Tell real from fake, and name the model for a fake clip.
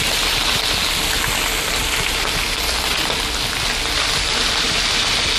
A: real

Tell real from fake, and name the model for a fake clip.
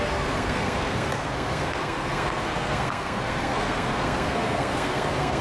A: fake, codec, SNAC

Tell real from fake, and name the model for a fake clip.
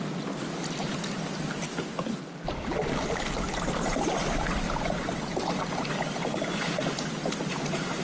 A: real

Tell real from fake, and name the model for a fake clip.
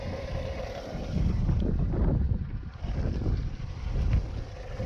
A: real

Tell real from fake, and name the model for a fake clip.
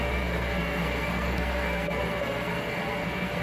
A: fake, codec, SNAC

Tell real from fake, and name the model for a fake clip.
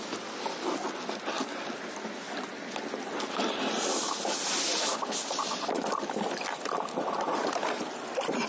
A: real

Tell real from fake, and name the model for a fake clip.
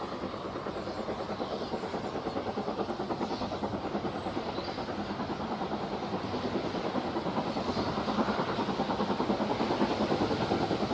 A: real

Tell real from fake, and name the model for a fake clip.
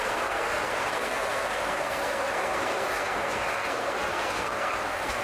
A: fake, codec, SNAC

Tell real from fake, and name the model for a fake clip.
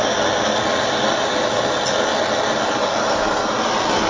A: real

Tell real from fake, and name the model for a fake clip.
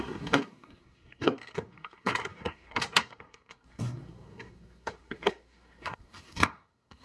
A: fake, codec, SNAC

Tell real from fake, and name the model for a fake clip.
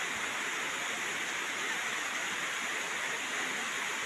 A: real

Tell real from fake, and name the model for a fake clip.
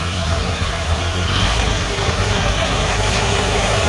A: fake, codec, SNAC